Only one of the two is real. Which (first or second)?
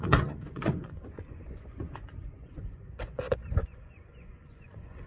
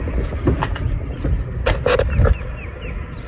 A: second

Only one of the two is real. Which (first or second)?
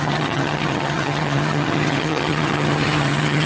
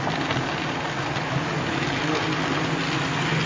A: second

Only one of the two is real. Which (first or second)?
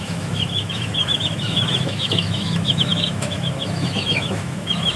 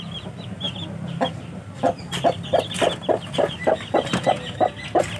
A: second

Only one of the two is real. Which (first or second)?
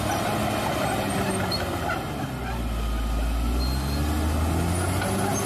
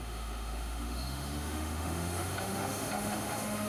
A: first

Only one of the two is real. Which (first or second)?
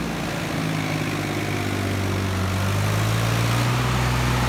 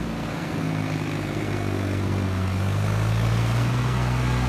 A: first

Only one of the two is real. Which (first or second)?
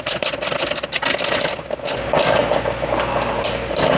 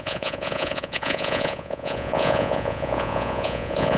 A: first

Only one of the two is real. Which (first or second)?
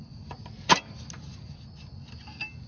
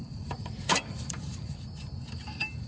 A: first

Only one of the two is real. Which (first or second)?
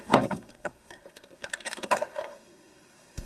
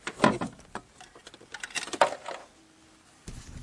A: second